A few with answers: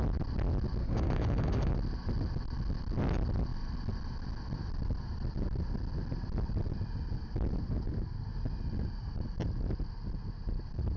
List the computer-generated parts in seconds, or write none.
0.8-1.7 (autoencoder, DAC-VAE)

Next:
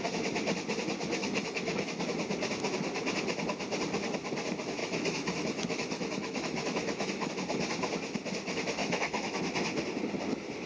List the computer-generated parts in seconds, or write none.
1.2-2.0 (autoencoder, DAC-VAE); 4.8-7.3; 8.8-9.4

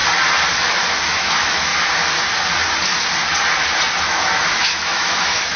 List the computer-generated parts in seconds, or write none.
0.6-1.7 (autoencoder, DAC-VAE); 4.0-5.6

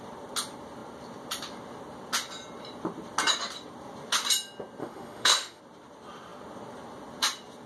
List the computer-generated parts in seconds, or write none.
4.8-5.6 (autoencoder, DAC-VAE)